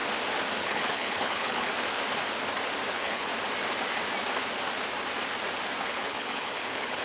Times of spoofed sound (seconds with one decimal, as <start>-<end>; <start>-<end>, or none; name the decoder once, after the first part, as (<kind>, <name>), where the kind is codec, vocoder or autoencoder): 0.6-1.7 (codec, HILCodec); 2.9-3.3; 5.8-7.0